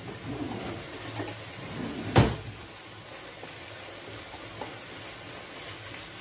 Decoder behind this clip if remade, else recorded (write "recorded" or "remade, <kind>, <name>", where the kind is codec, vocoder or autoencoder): recorded